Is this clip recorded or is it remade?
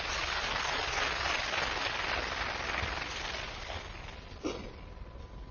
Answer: recorded